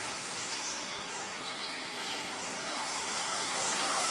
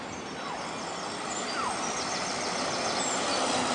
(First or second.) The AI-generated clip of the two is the first